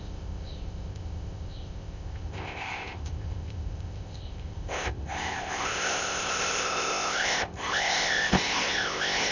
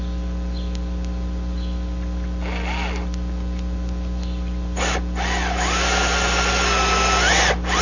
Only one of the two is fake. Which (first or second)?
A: first